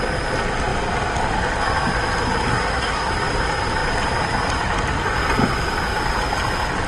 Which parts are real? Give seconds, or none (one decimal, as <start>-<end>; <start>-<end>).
0.0-2.5; 3.1-6.9

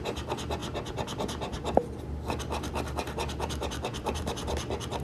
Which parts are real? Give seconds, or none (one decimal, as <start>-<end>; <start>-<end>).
0.0-5.0

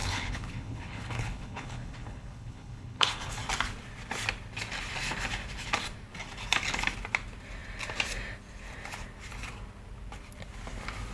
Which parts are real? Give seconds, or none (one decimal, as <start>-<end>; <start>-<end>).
3.4-11.1

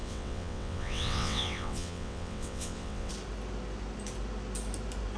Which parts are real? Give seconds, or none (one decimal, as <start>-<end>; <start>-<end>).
3.1-5.2

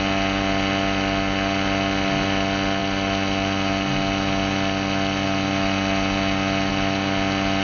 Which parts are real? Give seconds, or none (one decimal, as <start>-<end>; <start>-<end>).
0.0-7.6